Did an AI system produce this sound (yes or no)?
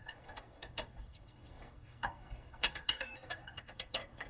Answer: yes